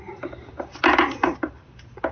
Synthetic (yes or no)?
no